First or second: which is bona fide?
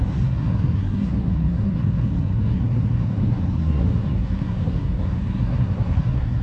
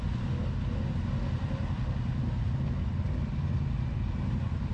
second